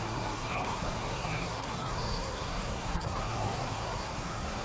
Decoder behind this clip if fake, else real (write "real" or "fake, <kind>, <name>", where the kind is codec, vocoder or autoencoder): fake, codec, SNAC